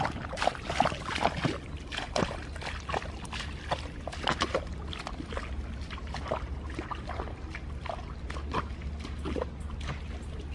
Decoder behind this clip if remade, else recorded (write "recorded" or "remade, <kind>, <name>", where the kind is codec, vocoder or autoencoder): recorded